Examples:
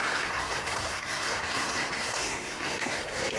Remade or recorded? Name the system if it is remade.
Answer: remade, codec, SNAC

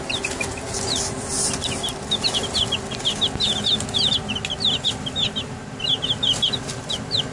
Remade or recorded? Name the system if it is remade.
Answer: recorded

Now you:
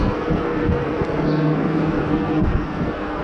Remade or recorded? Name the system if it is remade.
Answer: remade, codec, SNAC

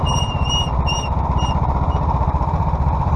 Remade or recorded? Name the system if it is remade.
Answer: remade, vocoder, BigVGAN v2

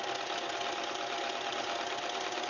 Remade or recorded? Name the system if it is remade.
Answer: recorded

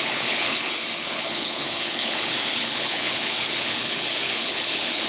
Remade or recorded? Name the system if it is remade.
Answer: remade, codec, HILCodec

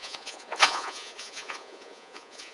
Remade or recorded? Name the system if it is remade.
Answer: remade, vocoder, Vocos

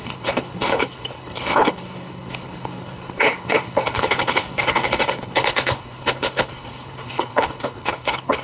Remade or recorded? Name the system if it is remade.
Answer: remade, codec, HILCodec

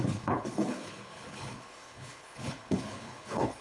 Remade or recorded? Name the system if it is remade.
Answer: remade, codec, HILCodec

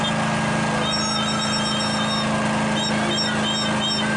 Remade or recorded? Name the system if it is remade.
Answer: recorded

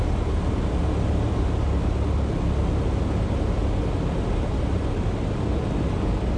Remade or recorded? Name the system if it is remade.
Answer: recorded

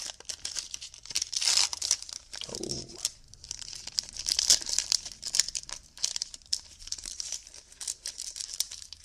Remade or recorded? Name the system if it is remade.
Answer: remade, vocoder, BigVGAN v2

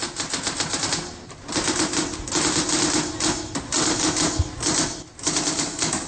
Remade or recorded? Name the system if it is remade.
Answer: recorded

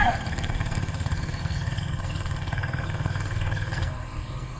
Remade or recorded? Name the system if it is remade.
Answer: remade, codec, SNAC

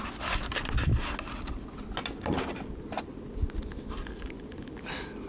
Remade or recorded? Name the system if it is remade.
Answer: recorded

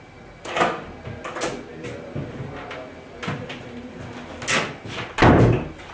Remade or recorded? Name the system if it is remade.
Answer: recorded